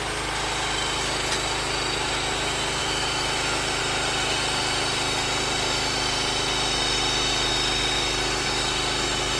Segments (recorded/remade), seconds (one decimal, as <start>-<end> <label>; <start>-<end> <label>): 0.0-2.8 recorded; 2.8-3.8 remade; 3.8-9.4 recorded

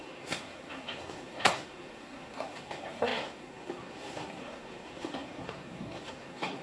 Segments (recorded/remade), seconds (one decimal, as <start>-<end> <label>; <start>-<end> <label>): 0.0-6.6 remade

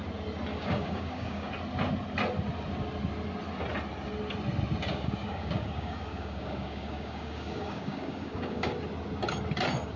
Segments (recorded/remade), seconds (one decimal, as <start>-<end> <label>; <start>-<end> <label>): 0.0-0.5 recorded; 0.5-1.5 remade; 1.5-4.9 recorded; 4.9-8.7 remade; 8.7-10.0 recorded

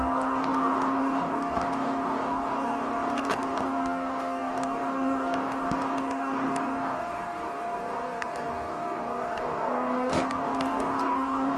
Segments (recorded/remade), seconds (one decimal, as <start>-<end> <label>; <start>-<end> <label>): 0.0-11.6 remade